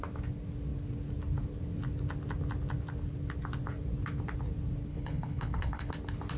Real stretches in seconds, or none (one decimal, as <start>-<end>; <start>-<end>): 0.0-4.9; 5.9-6.4